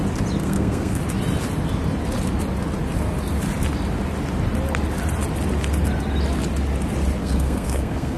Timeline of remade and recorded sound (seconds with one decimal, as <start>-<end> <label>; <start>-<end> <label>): 0.0-0.4 recorded; 0.4-1.0 remade; 1.0-7.2 recorded; 7.2-8.2 remade